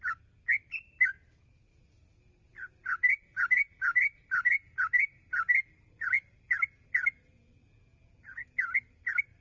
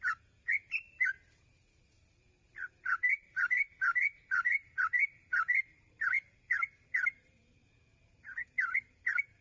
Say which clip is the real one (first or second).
first